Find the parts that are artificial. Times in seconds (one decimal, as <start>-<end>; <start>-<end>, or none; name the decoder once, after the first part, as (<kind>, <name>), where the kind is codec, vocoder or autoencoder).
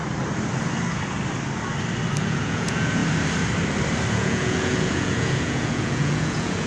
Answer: 2.2-3.0 (vocoder, Vocos); 4.1-6.7